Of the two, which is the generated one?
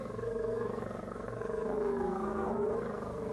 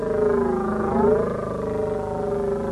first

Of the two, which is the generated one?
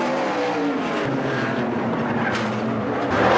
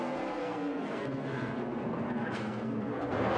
second